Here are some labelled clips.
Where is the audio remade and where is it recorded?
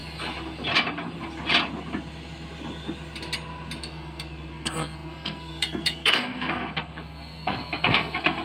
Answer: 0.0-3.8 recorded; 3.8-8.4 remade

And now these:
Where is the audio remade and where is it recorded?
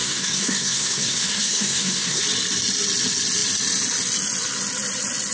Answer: 0.0-2.2 remade; 2.2-5.3 recorded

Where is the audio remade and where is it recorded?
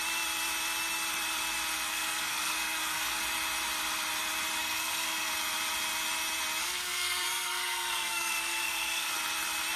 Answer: 0.0-1.9 recorded; 1.9-3.2 remade; 3.2-4.6 recorded; 4.6-5.3 remade; 5.3-6.6 recorded; 6.6-9.1 remade; 9.1-9.8 recorded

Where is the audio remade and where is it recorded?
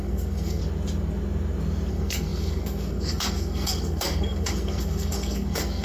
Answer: 0.0-0.6 remade; 0.6-1.9 recorded; 1.9-5.8 remade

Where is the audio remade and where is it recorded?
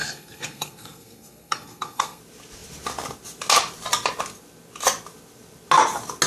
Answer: 0.0-2.2 remade; 2.2-6.3 recorded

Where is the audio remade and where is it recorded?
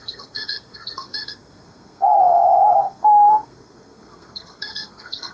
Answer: 0.0-5.3 remade